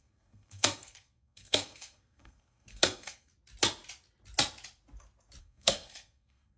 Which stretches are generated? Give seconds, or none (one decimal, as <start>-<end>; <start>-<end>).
0.0-3.3; 5.4-6.6